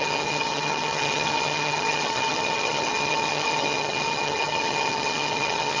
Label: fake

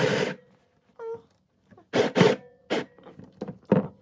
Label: real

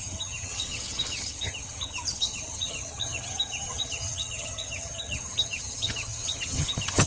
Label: fake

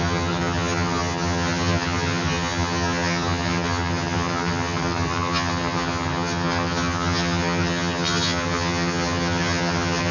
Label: fake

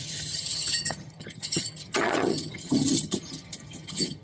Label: fake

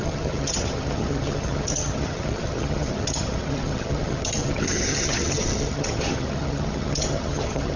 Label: fake